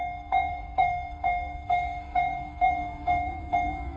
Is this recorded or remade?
remade